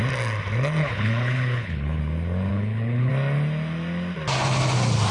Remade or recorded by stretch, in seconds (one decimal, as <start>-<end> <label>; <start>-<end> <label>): 0.0-0.8 recorded; 0.8-2.0 remade; 2.0-2.5 recorded; 2.5-3.1 remade; 3.1-5.1 recorded